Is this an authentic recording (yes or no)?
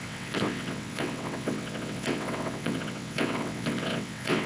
no